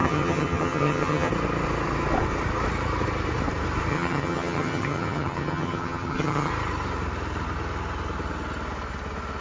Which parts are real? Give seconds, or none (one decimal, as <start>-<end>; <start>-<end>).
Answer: 1.3-3.9; 6.5-9.4